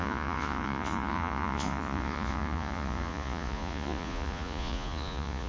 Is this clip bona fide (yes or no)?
no